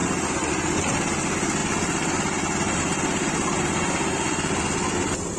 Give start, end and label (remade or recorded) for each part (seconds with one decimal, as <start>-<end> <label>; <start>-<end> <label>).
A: 0.0-5.4 recorded